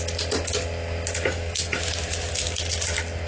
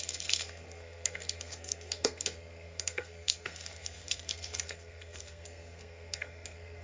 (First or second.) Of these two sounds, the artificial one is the second